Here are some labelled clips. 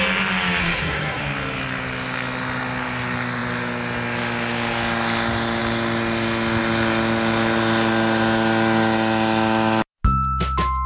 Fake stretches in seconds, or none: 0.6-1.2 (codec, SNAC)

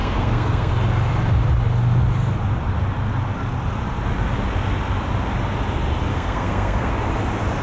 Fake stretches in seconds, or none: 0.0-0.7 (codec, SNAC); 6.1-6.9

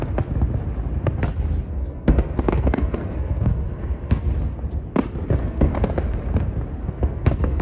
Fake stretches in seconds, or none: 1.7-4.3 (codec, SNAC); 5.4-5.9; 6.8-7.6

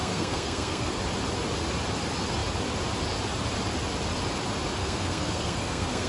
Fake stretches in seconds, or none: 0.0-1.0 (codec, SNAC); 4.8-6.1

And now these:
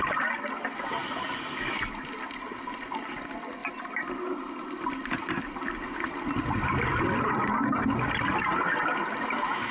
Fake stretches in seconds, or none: none

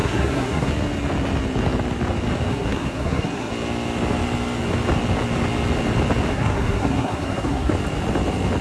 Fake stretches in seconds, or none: 0.0-0.7 (codec, SNAC); 2.5-3.5; 6.3-7.7

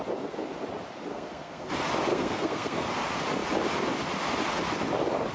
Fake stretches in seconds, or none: 1.1-1.7 (codec, SNAC); 2.1-2.9